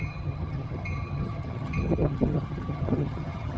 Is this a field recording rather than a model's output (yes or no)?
no